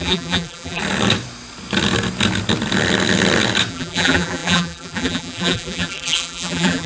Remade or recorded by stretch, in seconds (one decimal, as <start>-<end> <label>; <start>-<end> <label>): 0.0-0.8 remade; 0.8-3.7 recorded; 3.7-6.9 remade